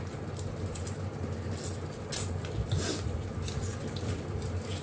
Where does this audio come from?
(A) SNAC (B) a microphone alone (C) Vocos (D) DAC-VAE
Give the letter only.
B